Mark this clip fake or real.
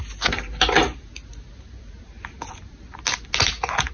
real